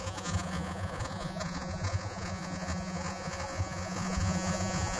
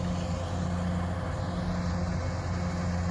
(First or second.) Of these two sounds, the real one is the second